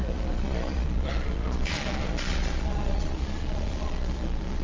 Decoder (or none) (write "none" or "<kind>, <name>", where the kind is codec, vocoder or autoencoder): vocoder, Vocos